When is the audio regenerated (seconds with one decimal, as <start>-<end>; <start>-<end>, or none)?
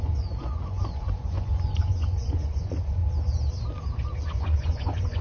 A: 0.0-3.0; 4.2-5.2